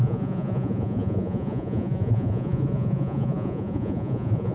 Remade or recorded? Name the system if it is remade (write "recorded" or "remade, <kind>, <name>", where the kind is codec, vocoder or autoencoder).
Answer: remade, vocoder, Vocos